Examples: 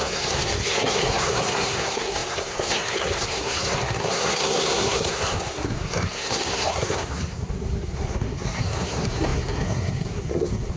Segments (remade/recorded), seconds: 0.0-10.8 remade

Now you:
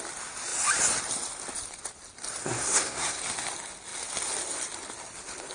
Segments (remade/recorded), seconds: 0.0-2.4 recorded; 2.4-3.2 remade; 3.2-5.5 recorded

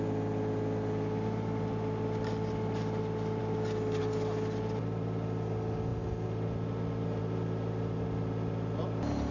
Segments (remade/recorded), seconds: 0.0-9.3 recorded

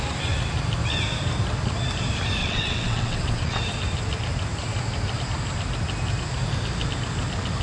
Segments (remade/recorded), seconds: 0.0-2.4 recorded; 2.4-3.6 remade; 3.6-7.6 recorded

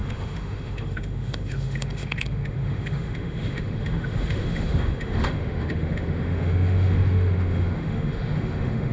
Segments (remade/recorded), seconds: 0.0-8.9 remade

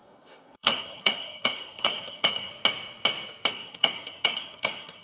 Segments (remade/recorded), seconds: 0.0-2.5 remade; 2.5-3.5 recorded; 3.5-5.0 remade

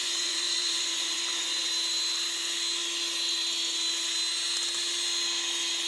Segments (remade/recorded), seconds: 0.0-1.7 remade; 1.7-5.9 recorded